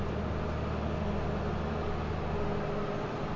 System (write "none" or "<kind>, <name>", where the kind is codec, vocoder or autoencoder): none